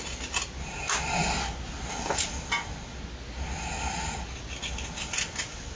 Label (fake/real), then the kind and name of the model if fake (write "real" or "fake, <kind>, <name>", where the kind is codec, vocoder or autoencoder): real